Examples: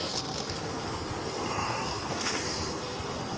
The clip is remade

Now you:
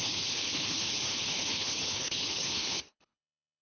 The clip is remade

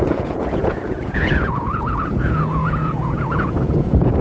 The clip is remade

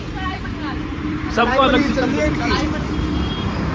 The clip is remade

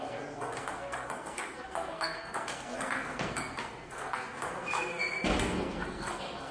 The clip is remade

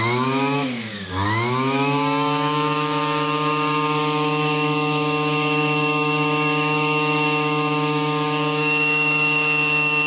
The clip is remade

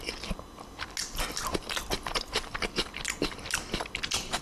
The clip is recorded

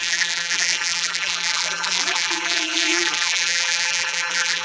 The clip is remade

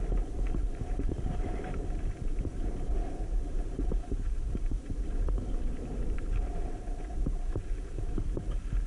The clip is remade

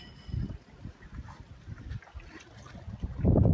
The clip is recorded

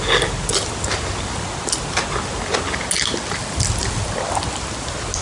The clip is recorded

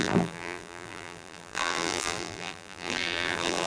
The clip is remade